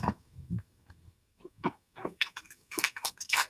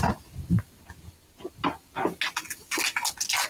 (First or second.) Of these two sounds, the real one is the second